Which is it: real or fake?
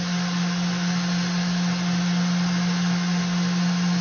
real